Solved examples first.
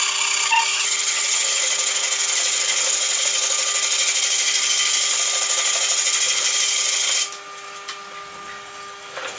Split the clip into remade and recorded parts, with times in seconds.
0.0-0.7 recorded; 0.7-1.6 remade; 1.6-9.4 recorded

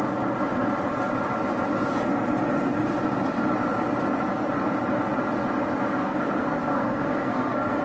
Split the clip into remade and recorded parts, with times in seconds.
0.0-6.0 recorded; 6.0-7.8 remade

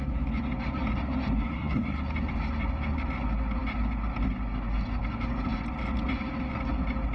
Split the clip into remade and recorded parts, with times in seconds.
0.0-1.5 recorded; 1.5-2.0 remade; 2.0-7.1 recorded

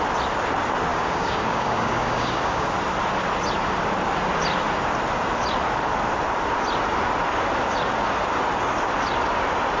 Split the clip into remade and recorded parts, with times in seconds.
0.0-0.9 recorded; 0.9-2.7 remade; 2.7-9.8 recorded

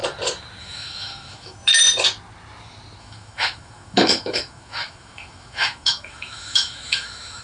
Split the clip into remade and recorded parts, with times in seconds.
0.0-0.6 recorded; 0.6-1.7 remade; 1.7-3.0 recorded; 3.0-7.4 remade

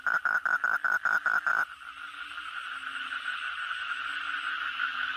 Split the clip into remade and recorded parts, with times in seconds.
0.0-5.2 recorded

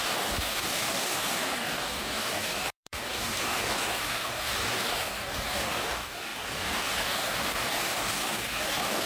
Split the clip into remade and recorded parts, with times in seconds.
0.0-9.1 remade